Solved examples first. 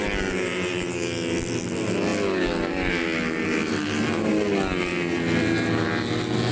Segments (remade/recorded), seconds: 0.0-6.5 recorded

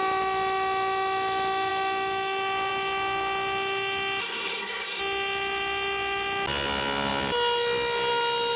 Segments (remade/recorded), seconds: 0.0-4.2 recorded; 4.2-5.0 remade; 5.0-8.6 recorded

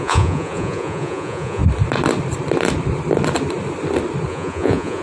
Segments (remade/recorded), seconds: 0.0-1.6 remade; 1.6-4.3 recorded; 4.3-5.0 remade